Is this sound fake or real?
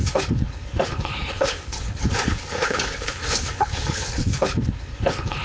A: fake